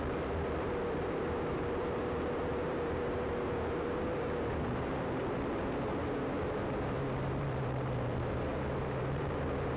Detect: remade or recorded remade